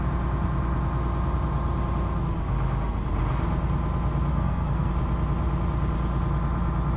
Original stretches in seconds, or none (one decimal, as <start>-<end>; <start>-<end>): 0.0-4.3; 4.9-7.0